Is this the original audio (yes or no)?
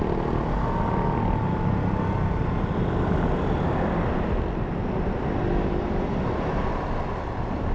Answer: yes